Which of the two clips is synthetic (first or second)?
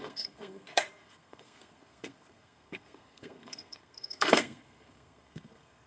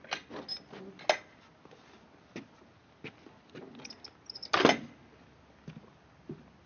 first